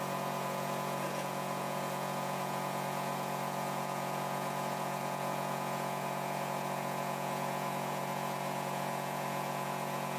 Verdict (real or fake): fake